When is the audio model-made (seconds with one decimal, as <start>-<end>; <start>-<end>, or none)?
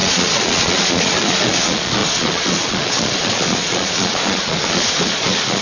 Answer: 0.0-5.6